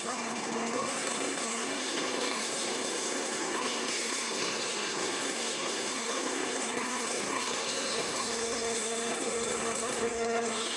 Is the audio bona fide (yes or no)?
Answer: no